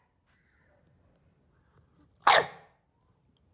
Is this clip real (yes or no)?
yes